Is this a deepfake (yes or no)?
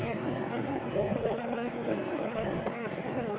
yes